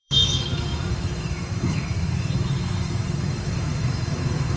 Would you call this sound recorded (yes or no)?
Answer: no